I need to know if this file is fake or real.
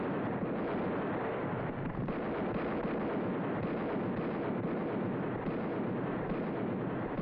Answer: real